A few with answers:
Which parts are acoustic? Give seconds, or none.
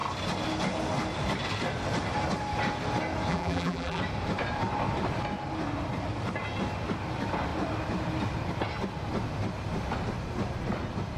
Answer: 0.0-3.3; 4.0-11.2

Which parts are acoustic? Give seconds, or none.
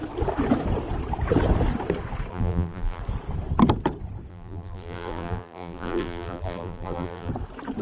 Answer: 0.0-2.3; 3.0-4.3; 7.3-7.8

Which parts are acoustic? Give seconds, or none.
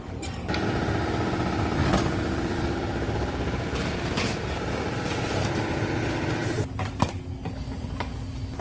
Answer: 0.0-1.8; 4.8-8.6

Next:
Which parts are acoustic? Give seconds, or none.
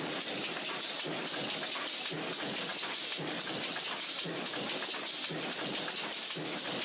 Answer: 0.0-2.7; 4.9-6.8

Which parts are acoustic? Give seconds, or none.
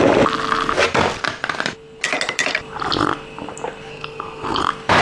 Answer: 0.0-3.9; 4.6-5.0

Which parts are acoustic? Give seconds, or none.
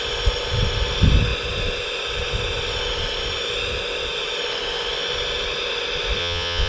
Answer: 0.0-6.2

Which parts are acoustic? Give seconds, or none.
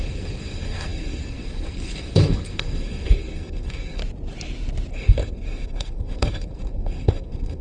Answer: 4.0-4.9